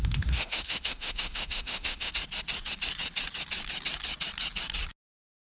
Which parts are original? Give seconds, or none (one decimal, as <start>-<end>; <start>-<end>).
2.1-5.4